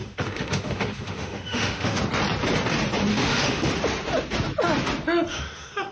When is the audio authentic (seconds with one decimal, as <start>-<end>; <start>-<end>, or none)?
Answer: 2.0-3.1; 3.7-5.3